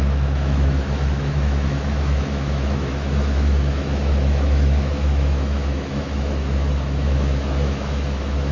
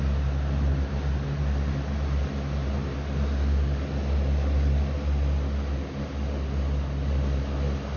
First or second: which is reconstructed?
first